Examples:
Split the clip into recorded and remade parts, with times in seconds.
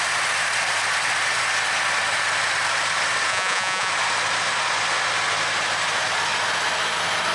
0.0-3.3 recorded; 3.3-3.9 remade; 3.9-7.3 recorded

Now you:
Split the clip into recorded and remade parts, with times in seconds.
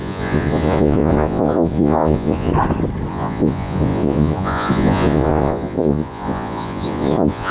0.0-2.5 remade; 2.5-3.1 recorded; 3.1-7.5 remade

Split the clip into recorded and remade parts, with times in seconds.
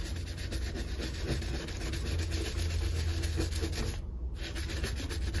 0.0-5.4 recorded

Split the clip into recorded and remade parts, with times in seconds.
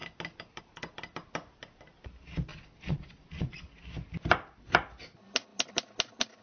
0.0-2.5 recorded; 2.5-3.7 remade; 3.7-6.4 recorded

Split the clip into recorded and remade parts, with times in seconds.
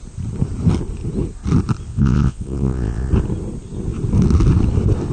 0.0-1.9 recorded; 1.9-3.1 remade; 3.1-5.1 recorded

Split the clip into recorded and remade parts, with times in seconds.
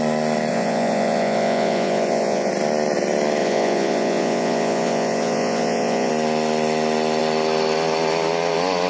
0.0-0.5 recorded; 0.5-2.5 remade; 2.5-3.4 recorded; 3.4-6.1 remade; 6.1-8.9 recorded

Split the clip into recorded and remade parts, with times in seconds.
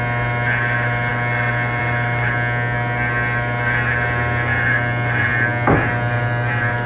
0.0-6.9 recorded